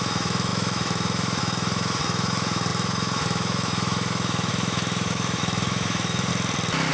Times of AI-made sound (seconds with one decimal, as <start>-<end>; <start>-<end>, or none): 0.0-6.3